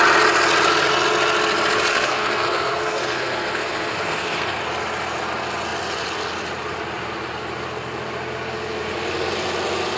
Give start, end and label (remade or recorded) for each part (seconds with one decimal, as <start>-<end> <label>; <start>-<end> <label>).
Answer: 0.0-1.9 recorded; 1.9-4.6 remade; 4.6-10.0 recorded